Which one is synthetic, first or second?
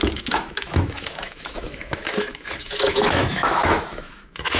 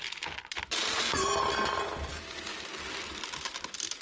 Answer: first